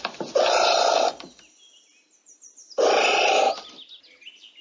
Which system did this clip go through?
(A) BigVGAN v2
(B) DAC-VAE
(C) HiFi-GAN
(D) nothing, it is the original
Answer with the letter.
D